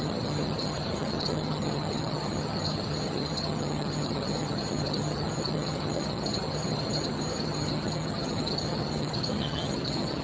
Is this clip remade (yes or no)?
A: yes